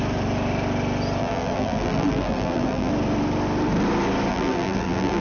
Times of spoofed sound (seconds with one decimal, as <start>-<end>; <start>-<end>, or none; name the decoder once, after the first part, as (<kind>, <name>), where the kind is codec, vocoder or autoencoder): 1.2-2.9 (vocoder, BigVGAN v2); 4.3-5.2